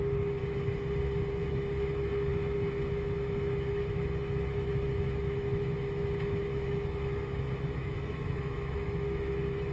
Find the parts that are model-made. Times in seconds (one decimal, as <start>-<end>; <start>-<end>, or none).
0.0-0.4; 1.5-9.7